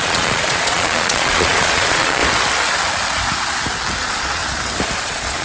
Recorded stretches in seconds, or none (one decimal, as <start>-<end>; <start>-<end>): 2.2-4.0; 4.4-5.0